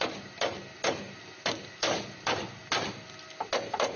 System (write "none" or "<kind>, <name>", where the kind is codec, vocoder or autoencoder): none